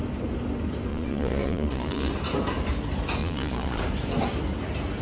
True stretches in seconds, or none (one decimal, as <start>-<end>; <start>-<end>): 0.0-0.9; 2.1-3.2; 3.8-5.0